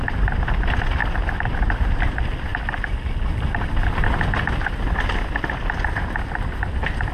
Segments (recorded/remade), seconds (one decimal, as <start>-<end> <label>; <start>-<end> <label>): 0.0-7.1 recorded

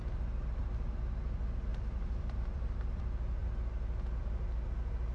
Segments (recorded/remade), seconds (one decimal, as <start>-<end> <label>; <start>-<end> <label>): 0.0-1.7 recorded; 1.7-3.0 remade; 3.0-5.1 recorded

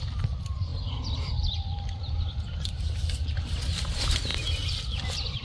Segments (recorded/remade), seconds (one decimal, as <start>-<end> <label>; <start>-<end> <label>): 0.0-5.4 recorded

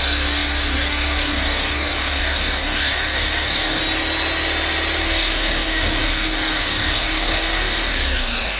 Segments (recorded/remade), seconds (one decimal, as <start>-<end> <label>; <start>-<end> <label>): 0.0-3.8 remade; 3.8-5.0 recorded; 5.0-8.6 remade

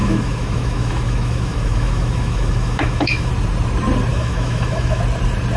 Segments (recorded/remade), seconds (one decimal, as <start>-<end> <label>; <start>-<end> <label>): 0.0-3.3 remade; 3.3-4.1 recorded; 4.1-5.0 remade; 5.0-5.6 recorded

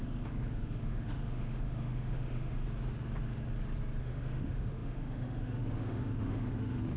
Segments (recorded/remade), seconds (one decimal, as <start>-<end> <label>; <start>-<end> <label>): 0.0-2.6 remade; 2.6-4.0 recorded; 4.0-7.0 remade

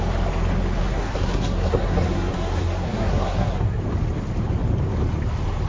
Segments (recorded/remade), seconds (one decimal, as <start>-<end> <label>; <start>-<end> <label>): 0.0-0.8 recorded; 0.8-3.8 remade; 3.8-5.7 recorded

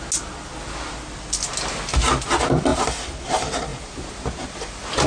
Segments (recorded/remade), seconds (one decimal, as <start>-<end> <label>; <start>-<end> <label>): 0.0-5.1 recorded